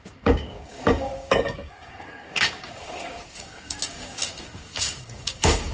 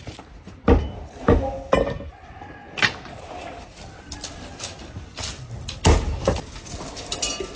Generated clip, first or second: first